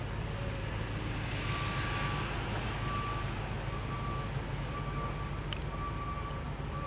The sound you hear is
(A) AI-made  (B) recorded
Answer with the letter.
B